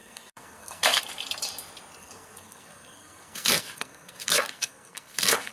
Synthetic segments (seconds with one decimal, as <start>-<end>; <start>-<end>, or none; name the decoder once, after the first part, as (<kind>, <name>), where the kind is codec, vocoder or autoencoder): 0.0-1.0 (codec, SNAC); 2.0-5.5